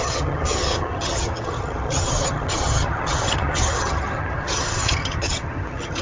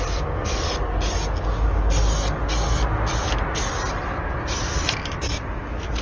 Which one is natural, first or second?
second